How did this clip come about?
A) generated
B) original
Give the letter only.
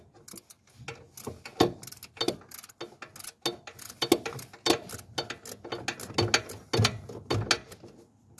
B